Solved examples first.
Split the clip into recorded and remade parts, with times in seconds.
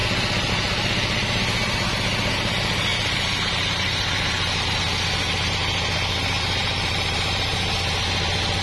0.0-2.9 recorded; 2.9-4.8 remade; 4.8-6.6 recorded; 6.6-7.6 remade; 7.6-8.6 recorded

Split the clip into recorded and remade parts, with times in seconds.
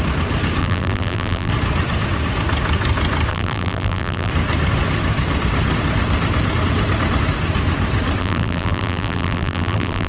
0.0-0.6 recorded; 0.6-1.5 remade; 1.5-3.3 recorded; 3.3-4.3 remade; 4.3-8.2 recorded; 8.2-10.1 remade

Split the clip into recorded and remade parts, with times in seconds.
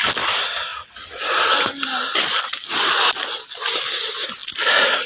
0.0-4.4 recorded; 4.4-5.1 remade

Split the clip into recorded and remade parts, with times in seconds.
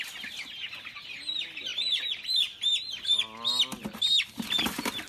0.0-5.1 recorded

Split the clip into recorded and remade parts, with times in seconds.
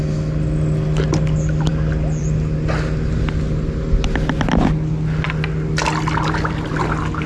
0.0-7.3 recorded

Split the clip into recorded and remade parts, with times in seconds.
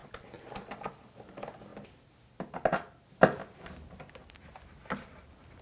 0.0-0.9 remade; 0.9-5.6 recorded